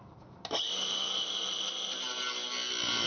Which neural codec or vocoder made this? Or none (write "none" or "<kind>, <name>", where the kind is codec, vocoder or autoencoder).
none